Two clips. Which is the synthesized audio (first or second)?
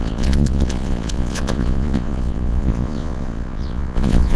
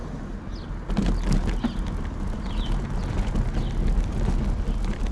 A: first